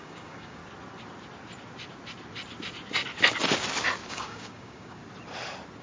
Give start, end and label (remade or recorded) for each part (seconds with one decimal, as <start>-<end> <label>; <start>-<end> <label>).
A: 0.0-0.6 remade; 0.6-4.1 recorded; 4.1-5.0 remade; 5.0-5.8 recorded